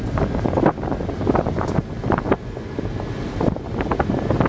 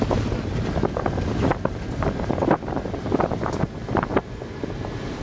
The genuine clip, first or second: first